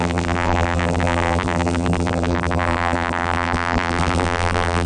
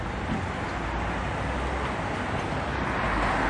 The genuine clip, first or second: second